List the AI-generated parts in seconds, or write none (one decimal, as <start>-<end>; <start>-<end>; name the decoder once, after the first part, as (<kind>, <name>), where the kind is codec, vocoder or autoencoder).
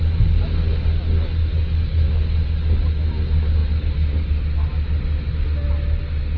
none